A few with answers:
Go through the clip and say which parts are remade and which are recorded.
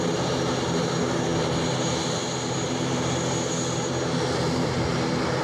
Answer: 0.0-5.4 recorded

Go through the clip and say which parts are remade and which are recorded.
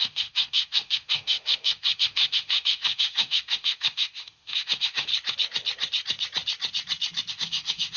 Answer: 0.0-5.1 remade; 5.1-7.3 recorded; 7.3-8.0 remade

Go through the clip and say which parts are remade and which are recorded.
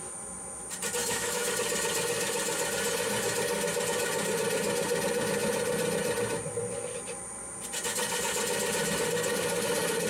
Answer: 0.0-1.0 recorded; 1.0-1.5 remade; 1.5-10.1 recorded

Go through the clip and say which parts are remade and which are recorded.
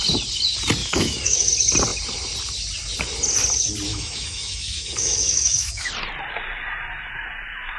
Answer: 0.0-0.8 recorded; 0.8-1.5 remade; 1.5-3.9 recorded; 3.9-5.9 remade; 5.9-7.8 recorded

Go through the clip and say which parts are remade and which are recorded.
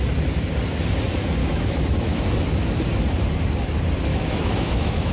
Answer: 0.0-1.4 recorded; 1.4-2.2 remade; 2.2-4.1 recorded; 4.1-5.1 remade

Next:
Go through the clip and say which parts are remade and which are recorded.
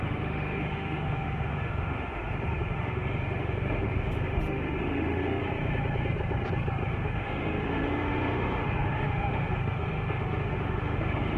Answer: 0.0-5.4 remade; 5.4-6.9 recorded; 6.9-11.4 remade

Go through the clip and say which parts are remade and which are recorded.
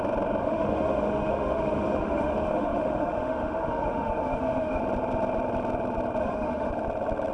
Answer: 0.0-0.4 recorded; 0.4-4.8 remade; 4.8-6.2 recorded; 6.2-6.7 remade; 6.7-7.3 recorded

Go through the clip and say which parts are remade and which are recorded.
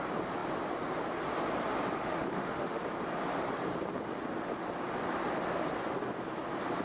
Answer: 0.0-2.0 recorded; 2.0-2.8 remade; 2.8-6.8 recorded